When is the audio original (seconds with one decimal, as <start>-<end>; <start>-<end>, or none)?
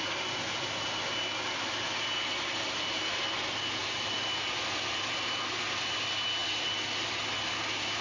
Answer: 0.0-3.8; 4.6-8.0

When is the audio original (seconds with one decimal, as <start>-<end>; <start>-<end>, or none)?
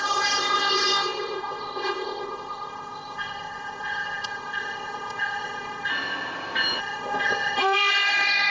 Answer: 5.9-6.8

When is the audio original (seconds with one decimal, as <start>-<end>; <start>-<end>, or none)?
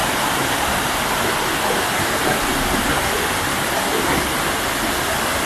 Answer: 0.0-5.5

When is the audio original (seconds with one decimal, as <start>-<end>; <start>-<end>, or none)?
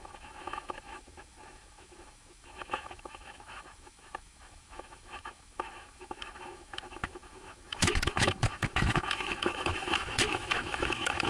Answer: none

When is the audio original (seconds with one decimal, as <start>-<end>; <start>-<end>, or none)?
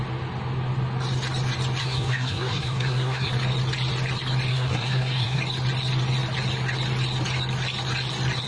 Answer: 0.0-1.8; 3.3-4.5; 5.4-8.5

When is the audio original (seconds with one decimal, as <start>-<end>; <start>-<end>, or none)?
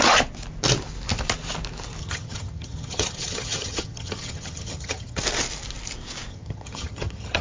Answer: 0.0-2.0; 5.2-6.3